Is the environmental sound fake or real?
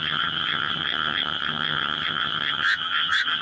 fake